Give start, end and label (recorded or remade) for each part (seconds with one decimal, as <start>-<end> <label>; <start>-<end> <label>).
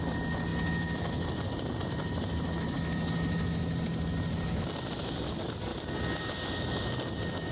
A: 0.0-7.5 recorded